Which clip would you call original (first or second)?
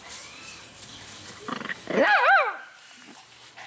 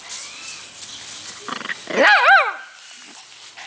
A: second